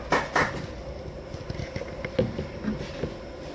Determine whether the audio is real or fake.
real